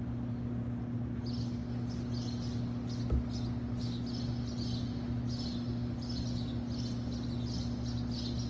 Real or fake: real